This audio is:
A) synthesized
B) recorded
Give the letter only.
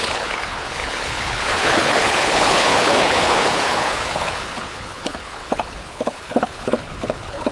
A